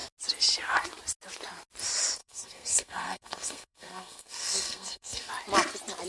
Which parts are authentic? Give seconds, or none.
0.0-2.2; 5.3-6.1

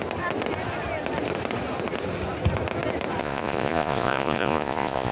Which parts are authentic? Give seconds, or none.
0.0-3.2

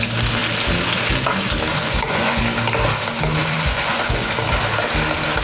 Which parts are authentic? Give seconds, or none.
0.0-1.7; 2.4-3.4; 4.3-5.4

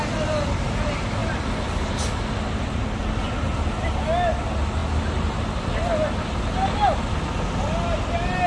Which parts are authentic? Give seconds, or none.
0.0-8.5